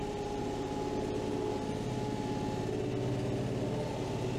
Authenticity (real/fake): real